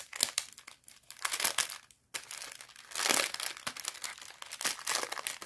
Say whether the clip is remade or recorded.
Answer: recorded